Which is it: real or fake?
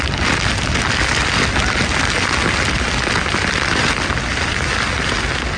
real